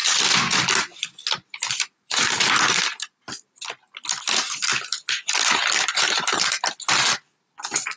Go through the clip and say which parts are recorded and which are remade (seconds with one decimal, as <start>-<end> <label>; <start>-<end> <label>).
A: 0.0-8.0 recorded